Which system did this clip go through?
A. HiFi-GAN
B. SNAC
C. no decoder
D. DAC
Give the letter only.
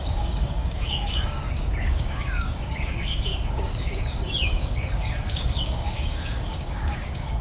D